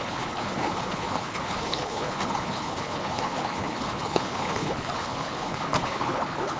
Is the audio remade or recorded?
remade